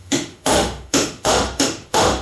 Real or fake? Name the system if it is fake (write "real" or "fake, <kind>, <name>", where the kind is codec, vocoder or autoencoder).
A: fake, autoencoder, DAC-VAE